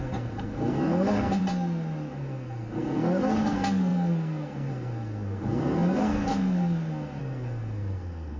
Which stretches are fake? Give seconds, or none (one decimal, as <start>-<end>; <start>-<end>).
0.0-1.4; 2.1-8.4